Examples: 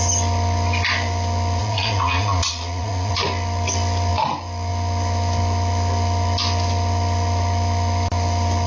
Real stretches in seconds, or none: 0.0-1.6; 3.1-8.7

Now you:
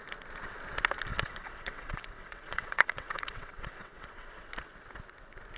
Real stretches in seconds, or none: 0.0-1.1; 4.5-5.6

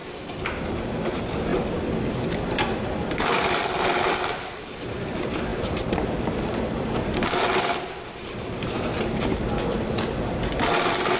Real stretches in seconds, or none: 0.0-11.2

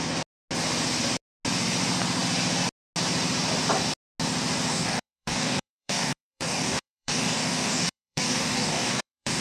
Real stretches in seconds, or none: 0.0-4.7

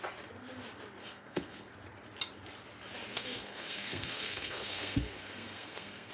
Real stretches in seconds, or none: 0.0-1.0; 1.7-3.1

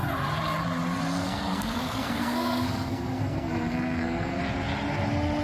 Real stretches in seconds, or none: 0.0-1.2; 4.4-5.4

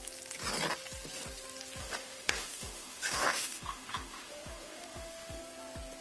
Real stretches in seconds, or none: 0.0-1.8; 5.4-6.0

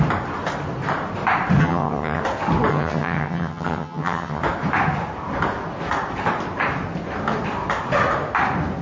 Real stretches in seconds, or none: 0.0-1.6; 2.2-2.7; 4.4-8.8